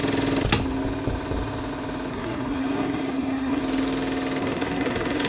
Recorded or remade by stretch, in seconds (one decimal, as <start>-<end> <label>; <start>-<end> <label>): 0.0-2.1 recorded; 2.1-3.6 remade; 3.6-4.4 recorded; 4.4-5.3 remade